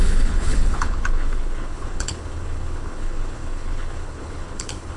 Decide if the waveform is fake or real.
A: fake